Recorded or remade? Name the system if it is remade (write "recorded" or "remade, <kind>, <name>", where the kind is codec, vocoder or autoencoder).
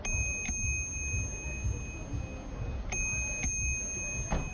recorded